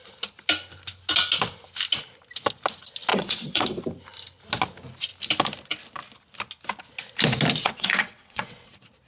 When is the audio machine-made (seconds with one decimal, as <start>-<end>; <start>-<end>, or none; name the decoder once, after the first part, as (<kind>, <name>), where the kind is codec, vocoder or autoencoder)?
3.1-3.8 (vocoder, WaveNeXt); 7.6-8.7